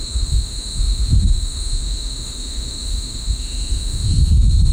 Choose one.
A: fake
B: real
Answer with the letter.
A